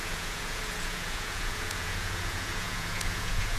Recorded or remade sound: remade